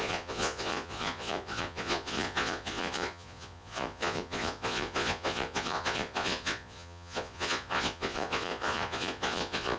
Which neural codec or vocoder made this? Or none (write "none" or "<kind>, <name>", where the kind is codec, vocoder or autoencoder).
vocoder, Vocos